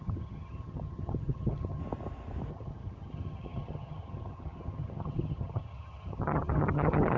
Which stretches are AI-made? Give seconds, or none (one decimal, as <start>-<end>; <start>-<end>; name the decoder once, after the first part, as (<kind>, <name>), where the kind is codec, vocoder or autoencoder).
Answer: 0.0-1.8 (vocoder, HiFi-GAN); 2.5-7.2